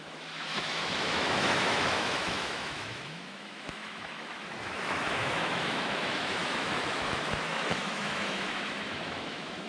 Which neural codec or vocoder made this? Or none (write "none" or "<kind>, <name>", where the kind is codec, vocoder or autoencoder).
autoencoder, DAC-VAE